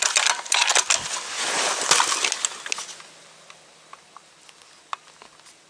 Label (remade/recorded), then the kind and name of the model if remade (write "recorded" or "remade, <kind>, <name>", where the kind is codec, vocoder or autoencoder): recorded